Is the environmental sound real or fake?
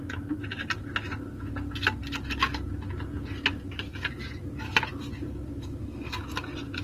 real